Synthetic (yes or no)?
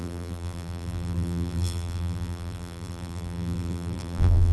yes